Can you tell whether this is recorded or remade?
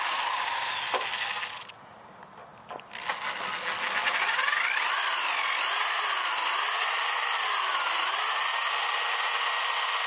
recorded